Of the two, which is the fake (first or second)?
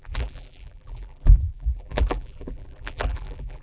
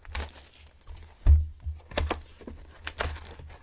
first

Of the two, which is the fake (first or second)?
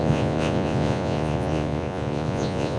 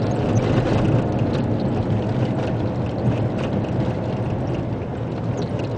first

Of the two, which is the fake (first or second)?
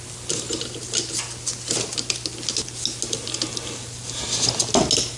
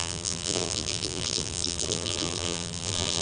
second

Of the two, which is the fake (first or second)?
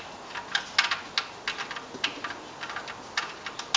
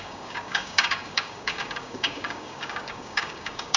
second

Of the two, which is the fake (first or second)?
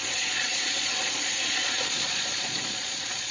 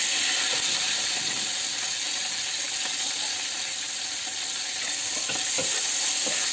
first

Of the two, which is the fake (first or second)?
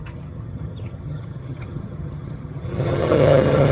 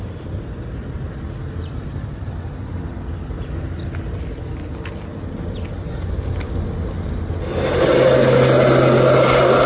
first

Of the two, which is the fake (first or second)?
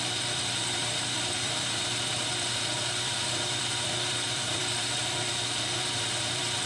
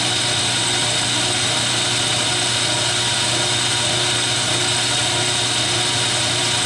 first